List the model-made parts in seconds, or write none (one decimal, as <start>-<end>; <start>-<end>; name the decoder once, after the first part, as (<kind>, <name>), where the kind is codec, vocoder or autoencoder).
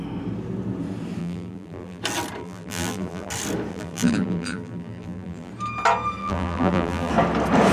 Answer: 1.2-2.0 (vocoder, BigVGAN v2); 2.4-3.3; 3.7-5.5; 6.2-7.1